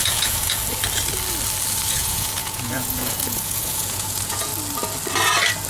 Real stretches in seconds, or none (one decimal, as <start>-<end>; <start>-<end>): 0.6-1.9; 4.5-5.7

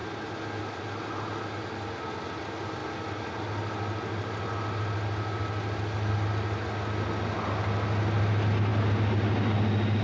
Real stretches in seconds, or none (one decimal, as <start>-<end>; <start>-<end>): 0.0-10.0

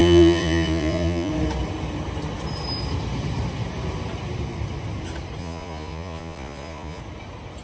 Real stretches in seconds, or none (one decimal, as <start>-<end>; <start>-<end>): 1.3-5.4; 7.0-7.6

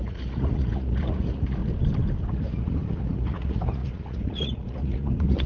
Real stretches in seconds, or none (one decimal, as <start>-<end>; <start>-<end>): 1.6-2.3

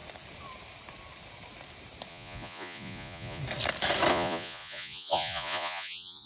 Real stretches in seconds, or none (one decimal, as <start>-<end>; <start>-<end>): 0.0-2.1; 3.4-4.1

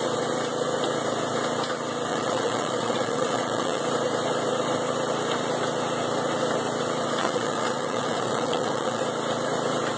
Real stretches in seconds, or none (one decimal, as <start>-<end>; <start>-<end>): 0.0-2.1; 3.8-7.2; 9.0-10.0

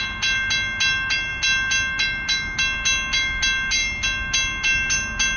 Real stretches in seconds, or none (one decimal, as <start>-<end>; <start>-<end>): 0.0-5.4

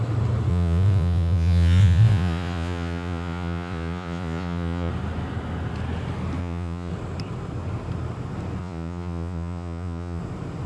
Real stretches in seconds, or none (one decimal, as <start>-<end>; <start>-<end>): 0.0-0.5; 4.9-6.4; 6.9-8.6; 10.2-10.7